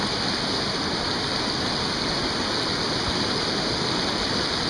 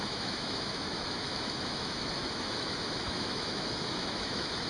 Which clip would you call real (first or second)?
first